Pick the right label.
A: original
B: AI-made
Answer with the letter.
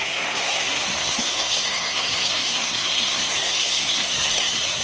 B